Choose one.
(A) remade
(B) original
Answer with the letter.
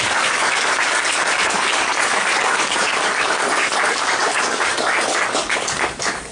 A